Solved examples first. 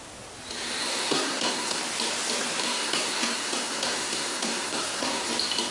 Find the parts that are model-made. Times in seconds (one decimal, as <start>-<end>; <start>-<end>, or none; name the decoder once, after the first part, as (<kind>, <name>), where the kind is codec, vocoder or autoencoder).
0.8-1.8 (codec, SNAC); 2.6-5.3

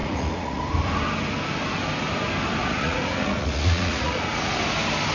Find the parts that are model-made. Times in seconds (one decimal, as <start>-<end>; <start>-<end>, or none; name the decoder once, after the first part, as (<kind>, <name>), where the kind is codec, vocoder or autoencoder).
0.0-0.6 (vocoder, Vocos); 2.6-4.5

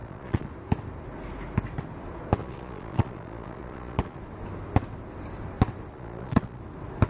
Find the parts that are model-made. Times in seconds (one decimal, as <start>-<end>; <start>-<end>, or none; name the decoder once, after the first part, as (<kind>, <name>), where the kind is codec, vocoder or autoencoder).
0.0-0.5 (vocoder, Vocos); 2.4-4.2; 5.9-6.6